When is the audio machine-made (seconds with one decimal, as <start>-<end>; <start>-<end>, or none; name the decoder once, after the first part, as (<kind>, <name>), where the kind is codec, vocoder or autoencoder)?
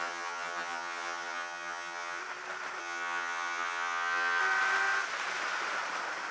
0.0-2.2 (vocoder, HiFi-GAN); 2.8-4.4